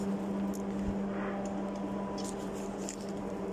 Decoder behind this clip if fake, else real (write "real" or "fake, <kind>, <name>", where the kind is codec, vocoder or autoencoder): real